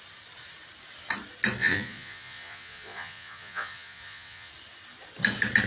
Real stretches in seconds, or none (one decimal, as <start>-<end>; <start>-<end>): 0.0-1.6; 4.5-5.7